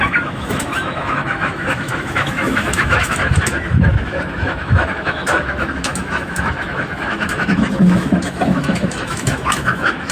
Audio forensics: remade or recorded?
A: remade